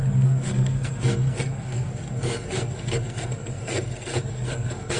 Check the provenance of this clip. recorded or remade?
remade